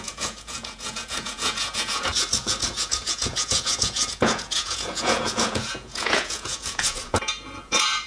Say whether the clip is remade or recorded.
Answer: remade